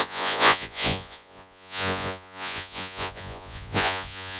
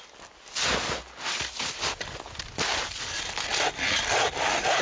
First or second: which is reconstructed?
first